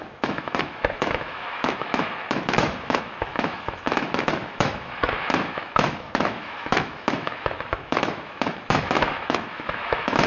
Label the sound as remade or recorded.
remade